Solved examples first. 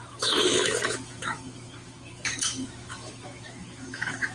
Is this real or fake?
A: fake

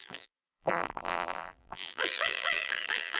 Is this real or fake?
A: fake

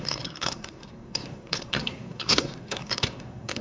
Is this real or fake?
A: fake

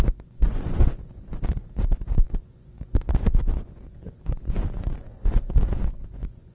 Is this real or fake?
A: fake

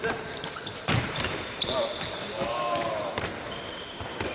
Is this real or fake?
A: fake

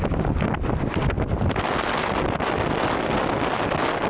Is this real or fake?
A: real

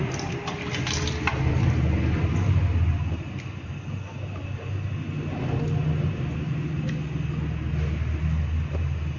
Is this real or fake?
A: real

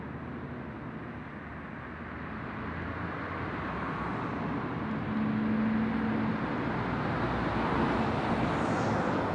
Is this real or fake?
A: real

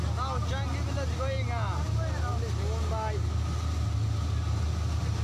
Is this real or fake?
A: real